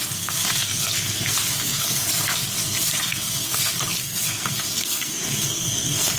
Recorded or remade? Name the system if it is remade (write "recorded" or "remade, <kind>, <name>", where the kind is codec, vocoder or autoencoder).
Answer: remade, codec, SNAC